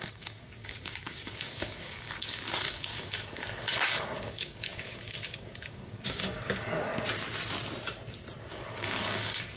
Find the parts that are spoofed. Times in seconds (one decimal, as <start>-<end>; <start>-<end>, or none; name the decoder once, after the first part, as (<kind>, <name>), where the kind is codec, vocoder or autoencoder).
0.0-6.9 (codec, DAC); 8.4-9.6